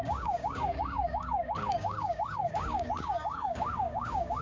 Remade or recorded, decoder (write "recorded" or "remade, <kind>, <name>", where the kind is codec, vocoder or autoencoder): remade, codec, DAC